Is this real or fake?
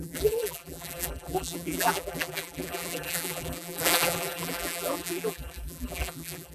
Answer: fake